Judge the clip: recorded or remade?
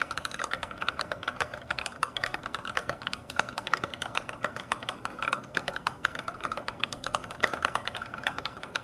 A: remade